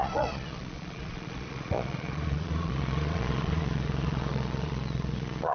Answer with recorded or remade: remade